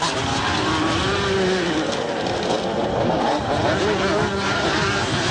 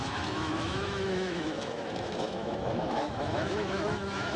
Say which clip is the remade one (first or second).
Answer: second